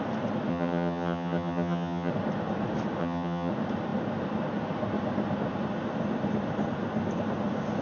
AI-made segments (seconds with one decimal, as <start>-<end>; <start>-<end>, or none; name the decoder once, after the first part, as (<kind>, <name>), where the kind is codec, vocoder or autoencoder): 0.5-2.1 (vocoder, HiFi-GAN); 3.0-3.5